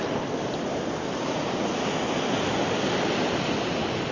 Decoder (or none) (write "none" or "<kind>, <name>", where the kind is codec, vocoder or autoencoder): none